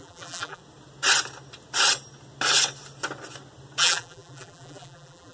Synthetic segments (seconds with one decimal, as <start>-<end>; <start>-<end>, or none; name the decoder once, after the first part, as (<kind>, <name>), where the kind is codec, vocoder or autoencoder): 0.0-0.6 (vocoder, BigVGAN v2); 3.8-5.3